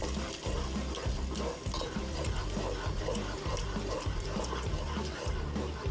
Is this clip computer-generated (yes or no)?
no